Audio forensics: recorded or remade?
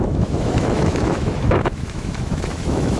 remade